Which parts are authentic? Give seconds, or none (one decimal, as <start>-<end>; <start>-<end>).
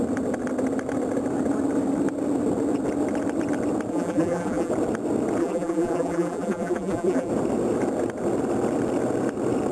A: 0.0-3.9; 4.7-5.4; 7.3-9.7